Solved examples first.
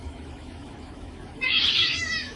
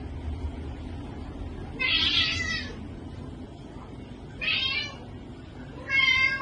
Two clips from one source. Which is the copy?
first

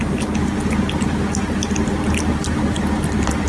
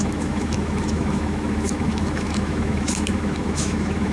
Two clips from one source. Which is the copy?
second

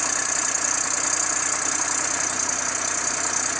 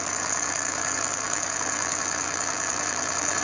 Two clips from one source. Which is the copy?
second